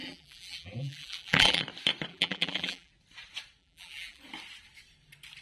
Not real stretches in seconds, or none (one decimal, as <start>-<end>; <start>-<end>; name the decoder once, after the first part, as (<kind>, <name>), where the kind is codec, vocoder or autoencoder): 0.0-1.6 (vocoder, BigVGAN v2); 2.1-2.9; 3.6-4.2